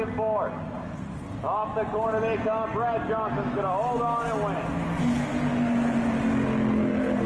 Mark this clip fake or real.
real